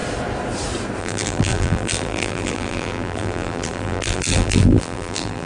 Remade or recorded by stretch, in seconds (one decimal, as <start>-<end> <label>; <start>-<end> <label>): 0.0-1.0 recorded; 1.0-5.5 remade